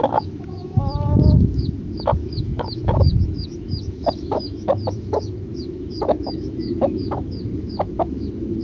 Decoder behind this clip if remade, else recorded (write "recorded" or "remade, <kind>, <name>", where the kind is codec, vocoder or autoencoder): remade, autoencoder, DAC-VAE